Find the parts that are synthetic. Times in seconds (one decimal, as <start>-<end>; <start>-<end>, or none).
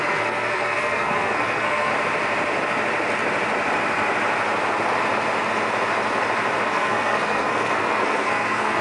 0.0-1.9; 6.6-8.8